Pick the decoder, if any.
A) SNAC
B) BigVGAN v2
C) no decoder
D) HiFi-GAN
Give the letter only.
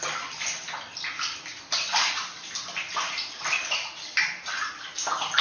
C